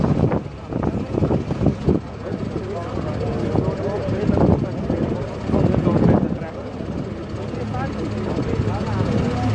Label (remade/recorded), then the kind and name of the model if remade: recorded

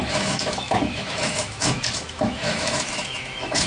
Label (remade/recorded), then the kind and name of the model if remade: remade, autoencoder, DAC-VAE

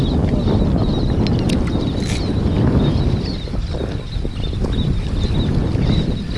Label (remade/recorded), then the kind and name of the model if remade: recorded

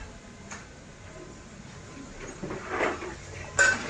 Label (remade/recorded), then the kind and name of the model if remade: recorded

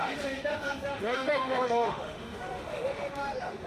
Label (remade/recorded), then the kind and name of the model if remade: remade, autoencoder, DAC-VAE